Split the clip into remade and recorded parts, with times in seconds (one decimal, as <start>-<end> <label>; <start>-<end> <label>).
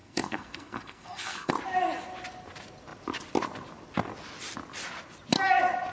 0.0-1.5 remade; 1.5-5.9 recorded